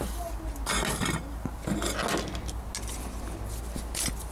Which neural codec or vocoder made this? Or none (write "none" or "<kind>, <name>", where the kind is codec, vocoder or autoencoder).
none